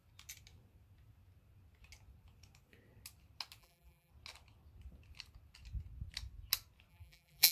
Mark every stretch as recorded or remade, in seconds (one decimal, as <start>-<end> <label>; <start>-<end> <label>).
0.0-3.6 recorded; 3.6-4.1 remade; 4.1-6.9 recorded; 6.9-7.5 remade